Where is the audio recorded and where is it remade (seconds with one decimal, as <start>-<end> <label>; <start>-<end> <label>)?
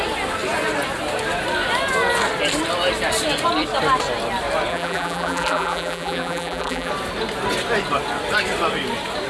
0.0-4.7 recorded; 4.7-6.9 remade; 6.9-9.3 recorded